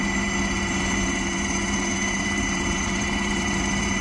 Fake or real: fake